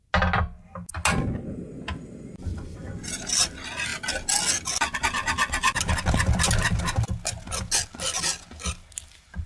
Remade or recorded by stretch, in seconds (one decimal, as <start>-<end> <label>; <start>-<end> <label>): 0.0-2.5 recorded; 2.5-3.3 remade; 3.3-9.5 recorded